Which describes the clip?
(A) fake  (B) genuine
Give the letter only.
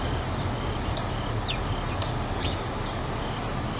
B